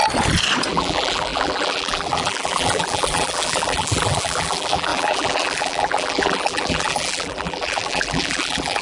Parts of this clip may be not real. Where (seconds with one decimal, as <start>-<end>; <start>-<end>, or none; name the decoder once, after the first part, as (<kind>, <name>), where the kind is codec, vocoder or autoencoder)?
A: 0.7-8.8 (vocoder, BigVGAN v2)